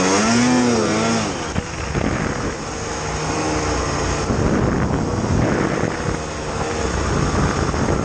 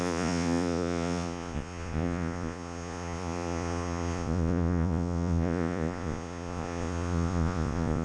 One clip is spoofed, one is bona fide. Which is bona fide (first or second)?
first